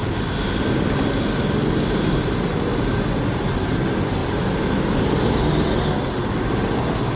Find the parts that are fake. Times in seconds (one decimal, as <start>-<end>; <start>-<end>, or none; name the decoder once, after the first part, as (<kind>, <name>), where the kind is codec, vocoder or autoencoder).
none